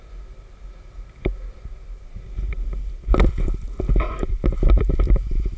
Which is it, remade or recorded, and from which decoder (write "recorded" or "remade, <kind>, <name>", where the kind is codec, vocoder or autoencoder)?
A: recorded